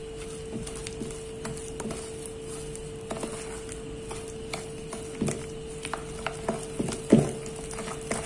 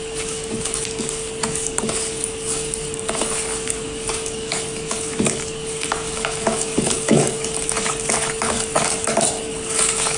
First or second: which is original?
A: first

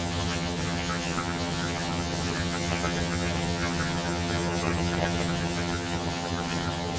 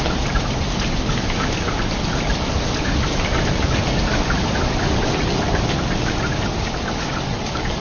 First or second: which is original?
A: second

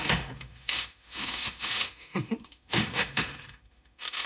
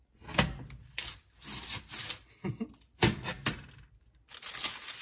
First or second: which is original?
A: second